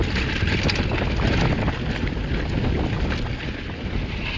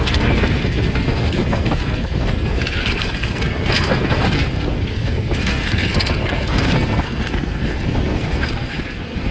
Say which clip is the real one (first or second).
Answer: first